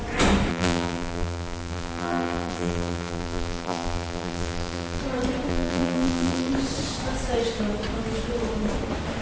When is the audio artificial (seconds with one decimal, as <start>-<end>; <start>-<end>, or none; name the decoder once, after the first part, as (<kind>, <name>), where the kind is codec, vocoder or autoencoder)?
0.5-5.0 (vocoder, BigVGAN v2); 5.5-6.5